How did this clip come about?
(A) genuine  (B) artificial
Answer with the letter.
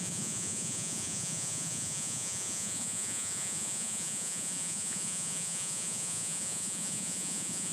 B